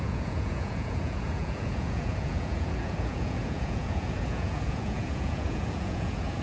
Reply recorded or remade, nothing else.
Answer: remade